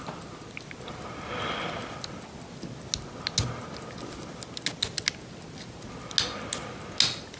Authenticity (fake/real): real